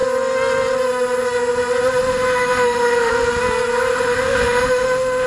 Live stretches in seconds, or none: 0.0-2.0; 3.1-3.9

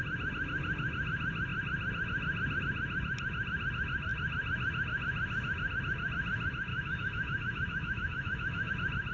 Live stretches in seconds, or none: 0.0-6.7; 8.7-9.1

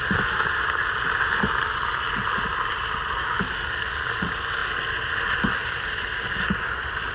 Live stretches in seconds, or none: 0.0-7.1

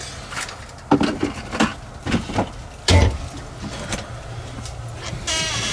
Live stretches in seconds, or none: 0.0-5.7